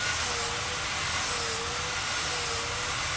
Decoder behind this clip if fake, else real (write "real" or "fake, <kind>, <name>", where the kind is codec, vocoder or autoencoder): real